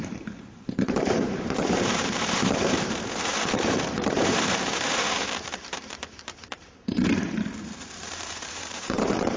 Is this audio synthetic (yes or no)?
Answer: yes